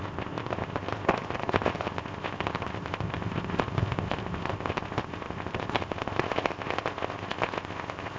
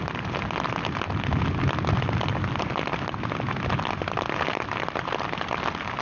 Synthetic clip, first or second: first